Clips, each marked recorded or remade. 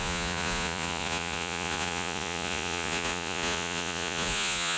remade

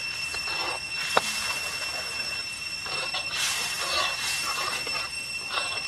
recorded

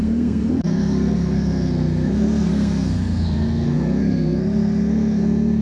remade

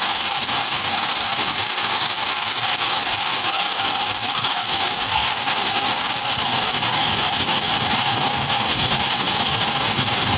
remade